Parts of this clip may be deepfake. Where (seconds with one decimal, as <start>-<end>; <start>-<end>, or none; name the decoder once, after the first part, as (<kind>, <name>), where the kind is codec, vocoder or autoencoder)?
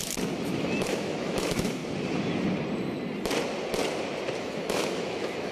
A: 0.6-1.8 (autoencoder, DAC-VAE); 4.4-5.5